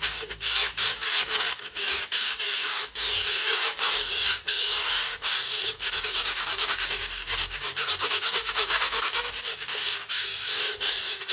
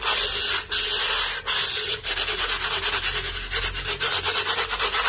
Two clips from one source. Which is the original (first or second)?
second